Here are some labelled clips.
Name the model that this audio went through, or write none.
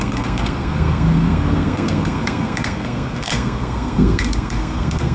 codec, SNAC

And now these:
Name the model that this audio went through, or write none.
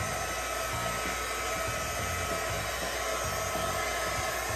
none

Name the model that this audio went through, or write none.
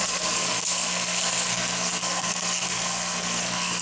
codec, SNAC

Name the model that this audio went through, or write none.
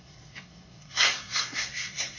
codec, SNAC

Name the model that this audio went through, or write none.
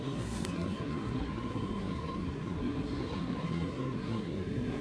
codec, SNAC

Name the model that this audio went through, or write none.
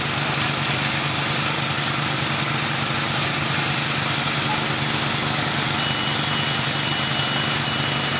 none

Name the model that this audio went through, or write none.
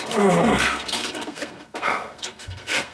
codec, SNAC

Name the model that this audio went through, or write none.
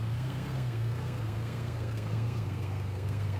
codec, SNAC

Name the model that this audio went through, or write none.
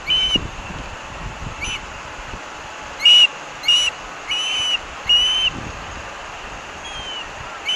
none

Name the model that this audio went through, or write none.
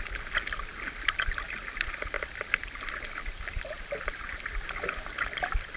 none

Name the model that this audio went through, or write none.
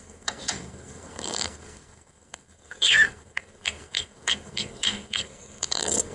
codec, SNAC